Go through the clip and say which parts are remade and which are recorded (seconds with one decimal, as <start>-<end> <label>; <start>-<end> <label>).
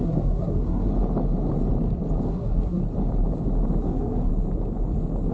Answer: 0.0-0.9 remade; 0.9-2.3 recorded; 2.3-2.8 remade; 2.8-3.8 recorded; 3.8-4.3 remade; 4.3-5.3 recorded